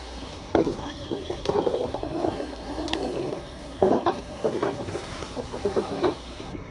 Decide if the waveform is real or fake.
fake